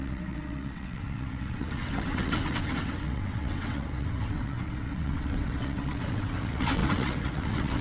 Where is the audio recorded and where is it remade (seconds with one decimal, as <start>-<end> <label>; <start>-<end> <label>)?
0.0-7.8 remade